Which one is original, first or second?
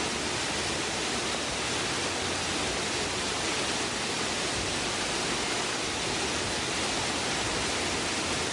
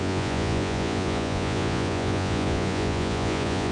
first